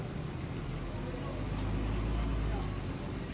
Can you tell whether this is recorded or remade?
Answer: recorded